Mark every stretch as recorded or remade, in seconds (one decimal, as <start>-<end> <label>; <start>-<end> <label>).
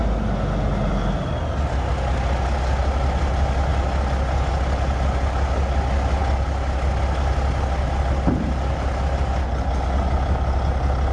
0.0-11.1 recorded